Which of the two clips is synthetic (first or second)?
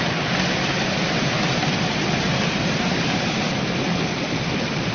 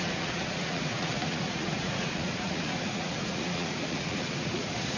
second